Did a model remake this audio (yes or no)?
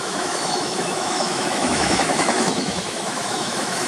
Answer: yes